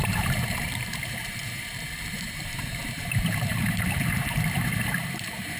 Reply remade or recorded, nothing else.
remade